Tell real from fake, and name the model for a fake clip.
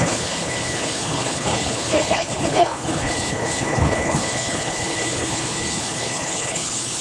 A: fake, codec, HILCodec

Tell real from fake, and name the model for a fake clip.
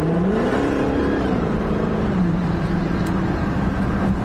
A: fake, vocoder, BigVGAN v2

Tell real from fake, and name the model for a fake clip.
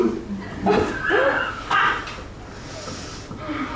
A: real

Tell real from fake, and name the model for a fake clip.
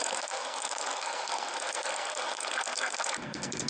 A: fake, codec, SNAC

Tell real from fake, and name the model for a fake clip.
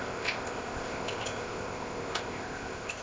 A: fake, codec, ZipCodec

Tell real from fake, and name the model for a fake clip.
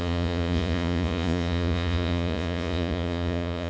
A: fake, vocoder, Vocos